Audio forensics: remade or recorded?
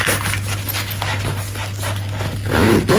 recorded